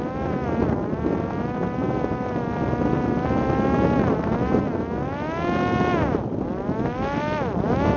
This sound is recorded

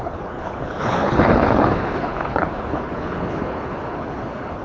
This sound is remade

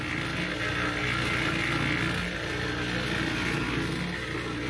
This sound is recorded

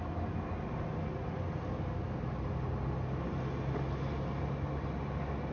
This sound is recorded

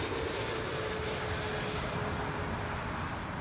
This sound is recorded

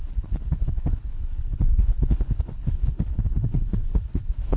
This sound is remade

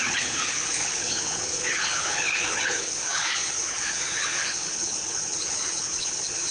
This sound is remade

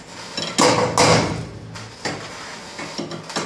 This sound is recorded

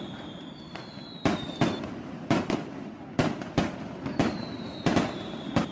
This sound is recorded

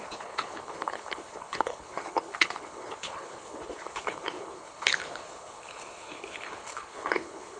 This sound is remade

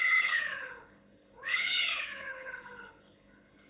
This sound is remade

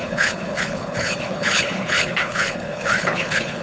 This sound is remade